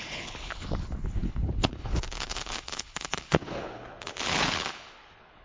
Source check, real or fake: fake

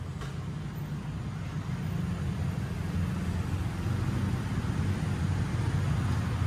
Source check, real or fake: real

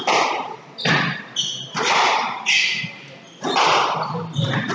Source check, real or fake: real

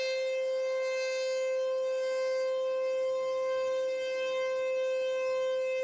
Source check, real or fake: real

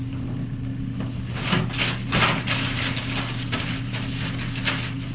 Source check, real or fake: real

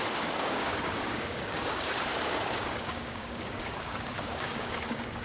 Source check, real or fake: fake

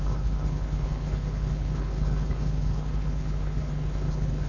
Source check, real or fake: fake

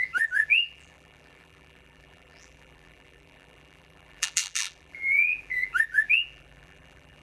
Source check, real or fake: fake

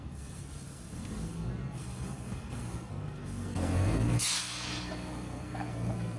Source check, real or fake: fake